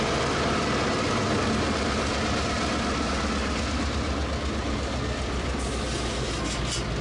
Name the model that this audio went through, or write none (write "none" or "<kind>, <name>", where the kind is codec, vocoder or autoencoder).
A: none